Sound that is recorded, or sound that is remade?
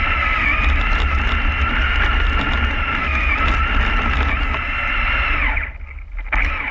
recorded